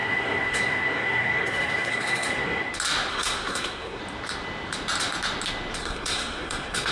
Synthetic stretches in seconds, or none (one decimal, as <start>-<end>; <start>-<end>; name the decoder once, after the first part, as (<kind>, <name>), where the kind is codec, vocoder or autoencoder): 0.0-2.7 (codec, SNAC); 3.1-4.0; 5.8-6.9